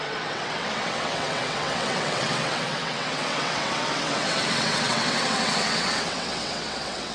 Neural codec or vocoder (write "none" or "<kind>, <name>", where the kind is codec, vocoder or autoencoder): vocoder, WaveNeXt